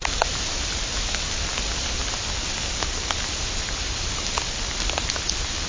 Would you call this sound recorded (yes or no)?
yes